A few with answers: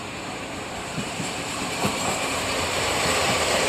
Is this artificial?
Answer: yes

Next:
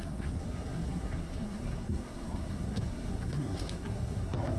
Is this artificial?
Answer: yes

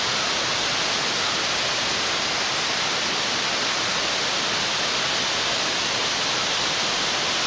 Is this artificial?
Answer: no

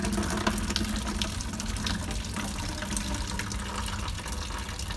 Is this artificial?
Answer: no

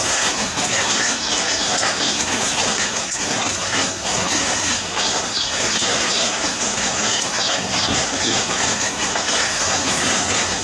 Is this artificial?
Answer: yes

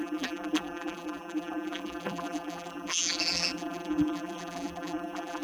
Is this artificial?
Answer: yes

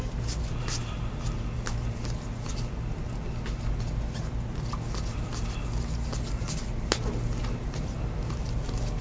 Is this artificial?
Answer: no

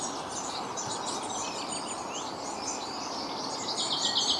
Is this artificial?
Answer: no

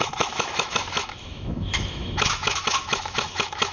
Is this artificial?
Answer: yes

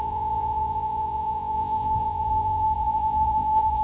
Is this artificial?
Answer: yes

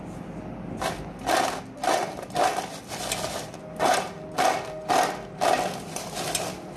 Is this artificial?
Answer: no